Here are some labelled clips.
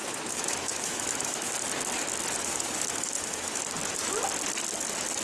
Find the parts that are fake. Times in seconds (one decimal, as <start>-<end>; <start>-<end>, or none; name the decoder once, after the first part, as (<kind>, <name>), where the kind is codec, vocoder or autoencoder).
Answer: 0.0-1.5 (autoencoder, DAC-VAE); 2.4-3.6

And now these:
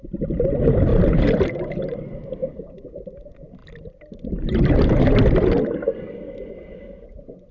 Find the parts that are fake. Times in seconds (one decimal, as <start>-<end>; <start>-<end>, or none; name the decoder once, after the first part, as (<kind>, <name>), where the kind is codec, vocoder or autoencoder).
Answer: 0.0-0.9 (vocoder, BigVGAN v2); 1.4-3.6; 6.5-7.5

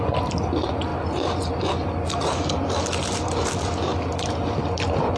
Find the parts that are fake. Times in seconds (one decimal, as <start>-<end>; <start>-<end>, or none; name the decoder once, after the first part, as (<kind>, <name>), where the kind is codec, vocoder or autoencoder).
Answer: 0.9-1.6 (vocoder, BigVGAN v2)

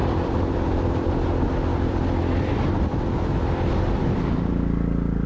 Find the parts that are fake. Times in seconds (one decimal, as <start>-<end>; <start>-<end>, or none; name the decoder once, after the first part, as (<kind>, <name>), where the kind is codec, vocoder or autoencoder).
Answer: 0.0-1.1 (vocoder, BigVGAN v2); 1.7-3.0

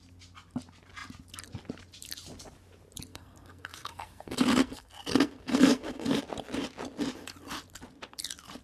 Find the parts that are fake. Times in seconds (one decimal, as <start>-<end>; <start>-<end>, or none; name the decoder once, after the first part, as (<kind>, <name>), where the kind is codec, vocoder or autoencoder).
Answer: 3.1-6.2 (codec, SNAC)

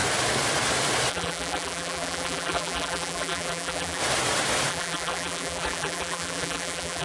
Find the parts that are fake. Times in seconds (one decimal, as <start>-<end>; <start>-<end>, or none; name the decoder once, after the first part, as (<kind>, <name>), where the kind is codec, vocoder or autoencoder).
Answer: 1.1-4.0 (vocoder, BigVGAN v2); 4.7-7.0